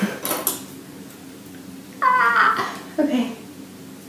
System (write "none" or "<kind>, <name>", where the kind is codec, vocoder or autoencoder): none